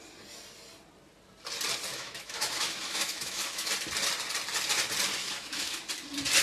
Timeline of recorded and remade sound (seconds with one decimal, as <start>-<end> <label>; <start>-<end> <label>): 0.0-1.9 recorded; 1.9-3.7 remade; 3.7-5.2 recorded; 5.2-5.8 remade; 5.8-6.4 recorded